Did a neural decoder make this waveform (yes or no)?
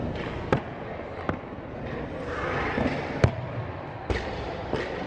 no